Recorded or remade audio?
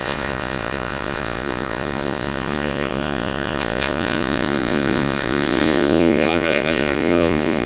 remade